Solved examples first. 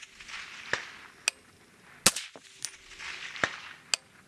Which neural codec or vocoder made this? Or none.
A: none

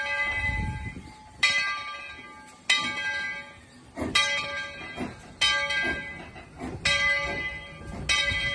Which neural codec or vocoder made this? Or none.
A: none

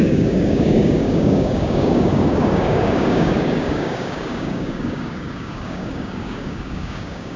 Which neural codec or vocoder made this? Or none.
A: codec, DAC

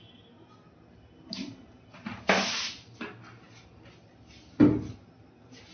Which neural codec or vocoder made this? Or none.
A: none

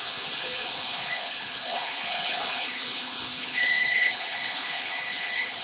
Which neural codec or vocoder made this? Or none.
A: codec, HILCodec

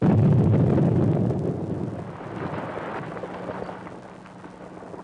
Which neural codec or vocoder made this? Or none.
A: none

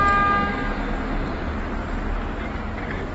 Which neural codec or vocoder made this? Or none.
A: none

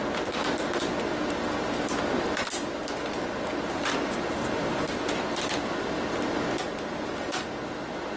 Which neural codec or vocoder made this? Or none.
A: none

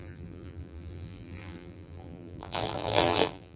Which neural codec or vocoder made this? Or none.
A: vocoder, BigVGAN v2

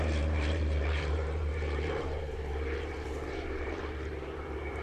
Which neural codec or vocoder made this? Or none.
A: vocoder, BigVGAN v2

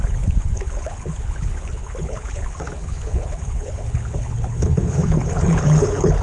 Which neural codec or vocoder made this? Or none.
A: codec, HILCodec